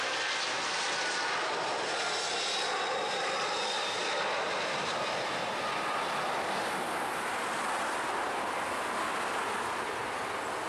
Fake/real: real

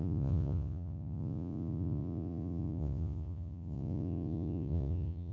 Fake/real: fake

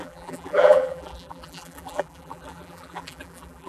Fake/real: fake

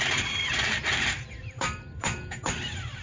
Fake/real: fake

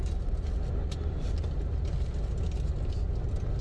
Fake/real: real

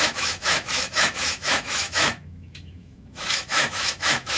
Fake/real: fake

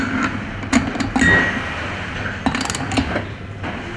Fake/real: real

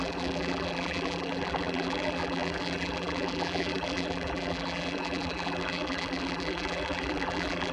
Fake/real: fake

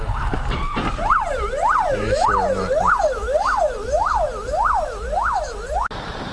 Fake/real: real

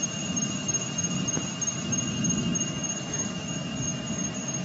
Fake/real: real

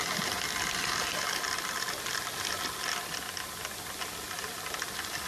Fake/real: real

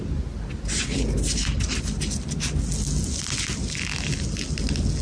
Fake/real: real